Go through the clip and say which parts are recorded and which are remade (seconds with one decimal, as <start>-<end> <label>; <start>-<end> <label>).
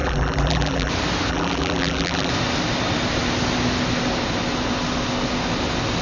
0.0-0.9 remade; 0.9-1.3 recorded; 1.3-2.3 remade; 2.3-6.0 recorded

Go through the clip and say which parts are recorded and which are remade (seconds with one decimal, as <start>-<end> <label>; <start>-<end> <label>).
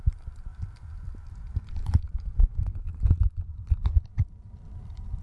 0.0-0.5 remade; 0.5-1.7 recorded; 1.7-2.9 remade; 2.9-3.7 recorded; 3.7-5.2 remade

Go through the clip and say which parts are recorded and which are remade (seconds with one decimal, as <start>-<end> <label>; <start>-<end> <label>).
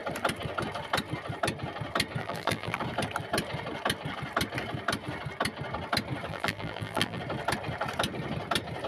0.0-2.2 recorded; 2.2-2.8 remade; 2.8-6.3 recorded; 6.3-7.2 remade; 7.2-8.9 recorded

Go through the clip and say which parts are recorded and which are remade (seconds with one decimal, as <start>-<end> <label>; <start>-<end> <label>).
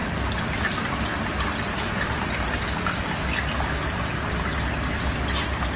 0.0-2.7 remade; 2.7-5.8 recorded